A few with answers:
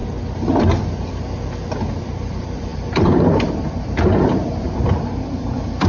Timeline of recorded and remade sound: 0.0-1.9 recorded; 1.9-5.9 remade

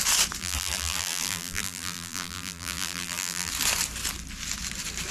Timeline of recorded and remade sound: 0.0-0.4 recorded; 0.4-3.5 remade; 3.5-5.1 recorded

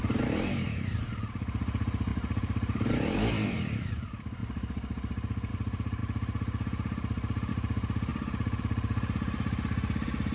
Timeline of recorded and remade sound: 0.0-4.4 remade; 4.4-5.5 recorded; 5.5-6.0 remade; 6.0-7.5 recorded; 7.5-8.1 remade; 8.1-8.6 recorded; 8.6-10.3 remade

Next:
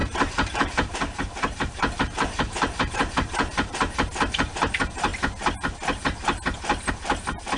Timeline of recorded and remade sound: 0.0-5.1 remade; 5.1-6.9 recorded; 6.9-7.6 remade

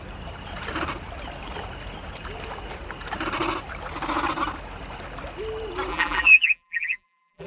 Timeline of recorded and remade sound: 0.0-5.9 recorded; 5.9-7.5 remade